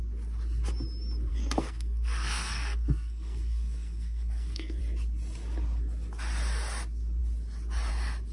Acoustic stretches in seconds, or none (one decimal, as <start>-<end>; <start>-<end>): 0.0-1.3; 4.8-8.3